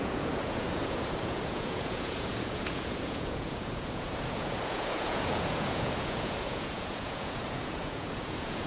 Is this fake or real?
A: fake